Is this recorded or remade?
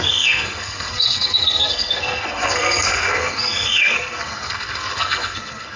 remade